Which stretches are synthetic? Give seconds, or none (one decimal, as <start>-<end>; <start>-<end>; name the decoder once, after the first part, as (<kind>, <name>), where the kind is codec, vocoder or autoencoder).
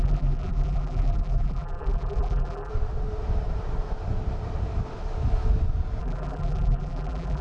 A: 0.0-2.7 (vocoder, BigVGAN v2); 6.0-7.4